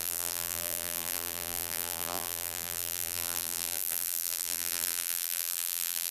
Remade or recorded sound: remade